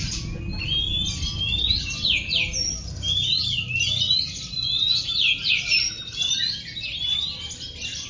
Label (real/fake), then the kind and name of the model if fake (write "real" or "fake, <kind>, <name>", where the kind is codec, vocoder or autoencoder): real